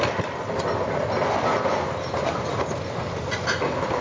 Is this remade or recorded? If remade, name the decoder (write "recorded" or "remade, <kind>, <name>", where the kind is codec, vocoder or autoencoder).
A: recorded